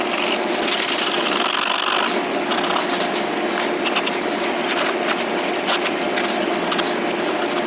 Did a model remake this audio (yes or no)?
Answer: no